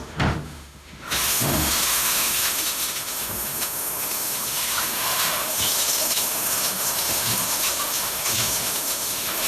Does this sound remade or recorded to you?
remade